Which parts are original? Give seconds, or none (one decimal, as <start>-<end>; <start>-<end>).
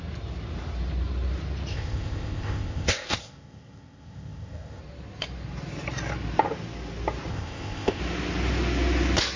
0.0-1.7; 4.8-7.3; 8.0-9.4